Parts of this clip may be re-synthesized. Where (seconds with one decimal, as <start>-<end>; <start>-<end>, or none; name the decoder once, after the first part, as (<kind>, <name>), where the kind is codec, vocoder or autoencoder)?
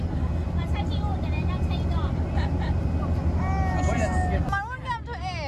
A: none